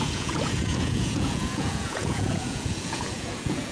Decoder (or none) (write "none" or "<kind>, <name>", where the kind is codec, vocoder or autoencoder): vocoder, Vocos